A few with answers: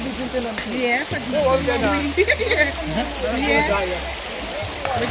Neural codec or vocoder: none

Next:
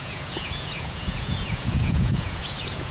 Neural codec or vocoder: vocoder, Vocos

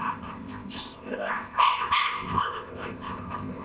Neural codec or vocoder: codec, ZipCodec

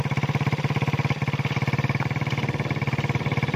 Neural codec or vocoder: none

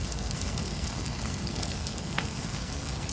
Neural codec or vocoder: codec, SNAC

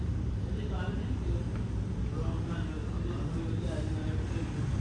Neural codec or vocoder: none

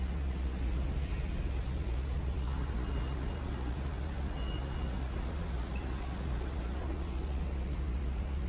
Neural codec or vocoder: vocoder, Vocos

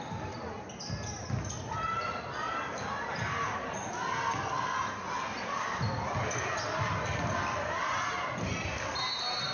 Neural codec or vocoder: none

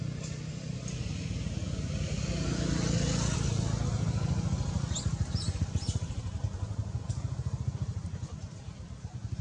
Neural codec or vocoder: none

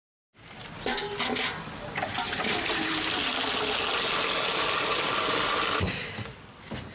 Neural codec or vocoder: none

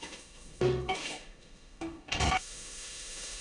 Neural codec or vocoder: autoencoder, DAC-VAE